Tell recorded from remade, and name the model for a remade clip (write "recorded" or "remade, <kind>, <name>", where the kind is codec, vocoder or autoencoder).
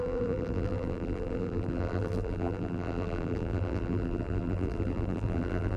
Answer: remade, vocoder, BigVGAN v2